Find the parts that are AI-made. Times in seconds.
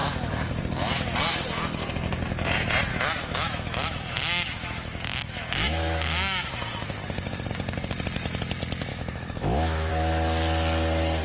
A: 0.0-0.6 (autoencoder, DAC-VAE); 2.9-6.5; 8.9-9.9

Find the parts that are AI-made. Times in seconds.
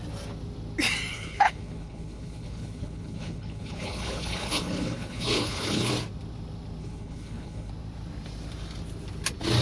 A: 1.1-5.9 (codec, HILCodec); 6.8-7.7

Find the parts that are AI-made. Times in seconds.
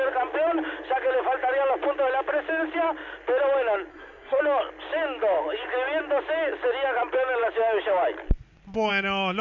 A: 3.9-4.4 (codec, SNAC)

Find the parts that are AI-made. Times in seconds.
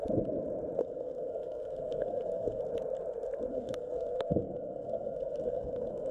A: 0.8-2.6 (codec, SNAC); 3.5-6.1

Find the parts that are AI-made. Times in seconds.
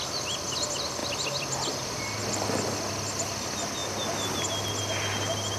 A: 3.8-4.8 (vocoder, BigVGAN v2)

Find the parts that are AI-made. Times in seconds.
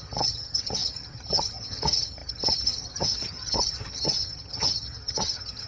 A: 0.0-5.7 (vocoder, HiFi-GAN)